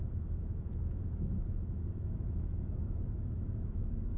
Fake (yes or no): yes